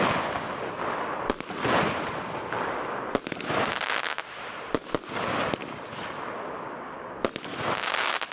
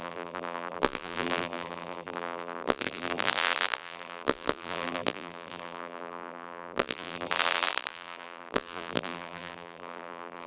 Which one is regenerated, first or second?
second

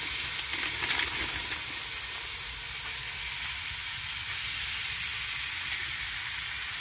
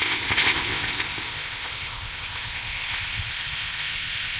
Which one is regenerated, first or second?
second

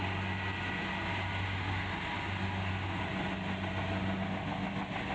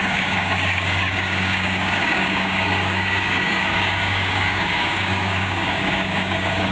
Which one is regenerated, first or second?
second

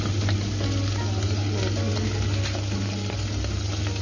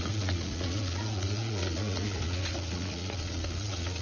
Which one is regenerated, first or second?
second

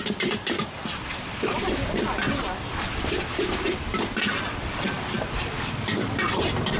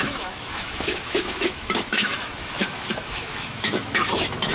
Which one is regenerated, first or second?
second